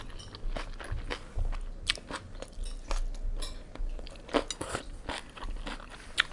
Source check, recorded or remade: recorded